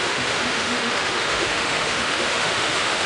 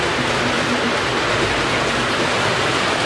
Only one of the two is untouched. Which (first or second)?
second